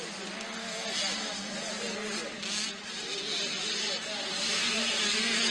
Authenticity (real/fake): real